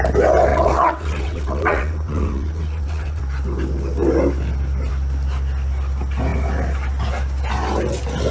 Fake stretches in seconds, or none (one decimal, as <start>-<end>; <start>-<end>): 0.5-3.2